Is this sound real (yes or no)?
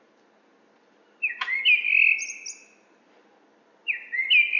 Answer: yes